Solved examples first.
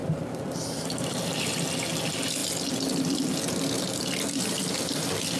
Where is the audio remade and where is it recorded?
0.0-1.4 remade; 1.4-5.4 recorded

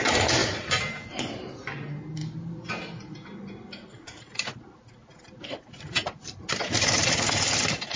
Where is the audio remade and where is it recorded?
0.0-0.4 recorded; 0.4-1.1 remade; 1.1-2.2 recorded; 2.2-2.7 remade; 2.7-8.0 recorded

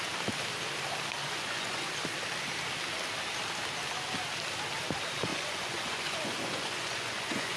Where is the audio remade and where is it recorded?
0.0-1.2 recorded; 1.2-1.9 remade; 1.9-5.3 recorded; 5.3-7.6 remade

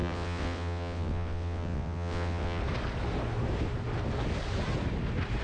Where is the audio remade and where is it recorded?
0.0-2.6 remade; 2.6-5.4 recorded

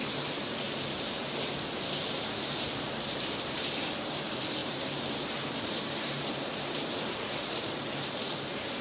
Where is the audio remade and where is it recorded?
0.0-8.8 remade